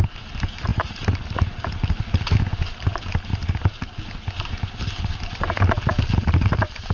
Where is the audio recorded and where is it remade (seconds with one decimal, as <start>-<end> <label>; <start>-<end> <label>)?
0.0-0.7 recorded; 0.7-2.0 remade; 2.0-6.9 recorded